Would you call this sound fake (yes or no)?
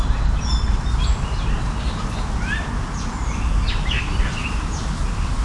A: no